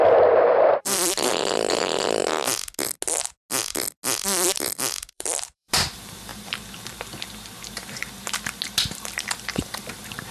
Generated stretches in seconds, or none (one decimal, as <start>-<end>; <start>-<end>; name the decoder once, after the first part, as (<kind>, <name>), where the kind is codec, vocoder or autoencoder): 0.0-2.2 (vocoder, BigVGAN v2); 4.6-6.3; 8.9-10.3